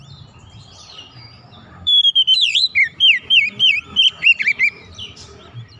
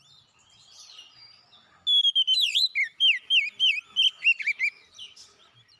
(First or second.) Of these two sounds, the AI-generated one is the first